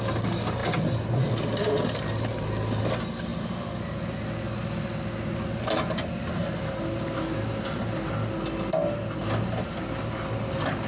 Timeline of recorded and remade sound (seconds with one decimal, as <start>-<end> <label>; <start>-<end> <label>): 0.0-10.9 recorded